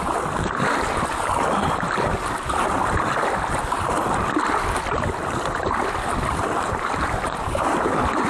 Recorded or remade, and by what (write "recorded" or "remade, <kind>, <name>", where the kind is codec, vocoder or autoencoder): recorded